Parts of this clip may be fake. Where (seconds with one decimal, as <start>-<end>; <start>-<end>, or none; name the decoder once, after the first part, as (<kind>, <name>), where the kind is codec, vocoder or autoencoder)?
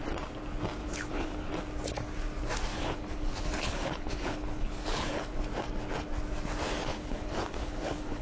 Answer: 0.8-1.5 (codec, HILCodec); 2.7-5.4; 6.9-8.2